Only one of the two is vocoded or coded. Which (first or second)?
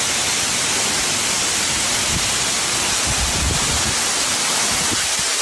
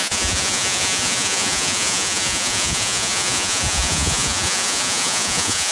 second